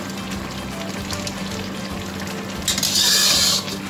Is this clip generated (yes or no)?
no